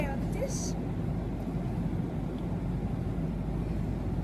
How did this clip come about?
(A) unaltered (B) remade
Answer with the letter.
A